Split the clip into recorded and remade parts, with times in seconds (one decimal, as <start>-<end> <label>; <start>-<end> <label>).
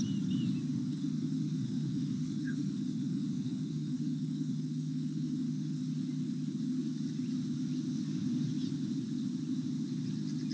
0.0-0.7 recorded; 0.7-5.9 remade; 5.9-10.5 recorded